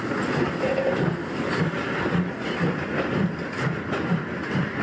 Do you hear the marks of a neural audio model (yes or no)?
no